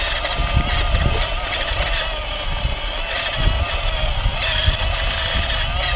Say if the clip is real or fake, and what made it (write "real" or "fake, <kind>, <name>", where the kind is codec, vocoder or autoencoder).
real